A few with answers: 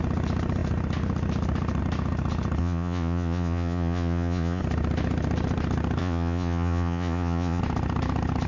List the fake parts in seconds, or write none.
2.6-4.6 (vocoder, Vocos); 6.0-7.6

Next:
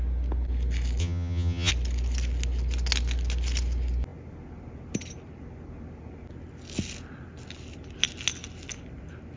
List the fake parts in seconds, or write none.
1.0-1.7 (vocoder, HiFi-GAN)

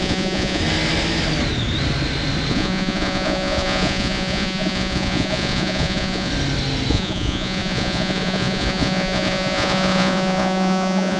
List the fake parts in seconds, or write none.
0.0-0.6 (vocoder, Vocos); 2.5-6.3; 6.9-11.2

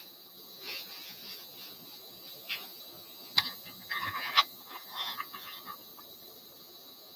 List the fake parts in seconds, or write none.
0.0-5.9 (vocoder, Vocos); 6.6-7.2

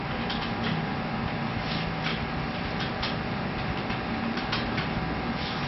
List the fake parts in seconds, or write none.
2.1-5.7 (vocoder, BigVGAN v2)

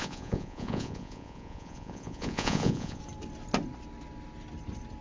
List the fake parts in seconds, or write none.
0.0-3.0 (vocoder, Vocos)

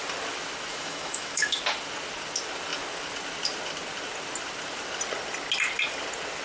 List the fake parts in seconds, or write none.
0.7-1.6 (autoencoder, DAC-VAE)

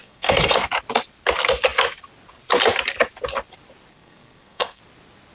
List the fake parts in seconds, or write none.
0.0-0.7 (codec, SNAC); 3.9-4.8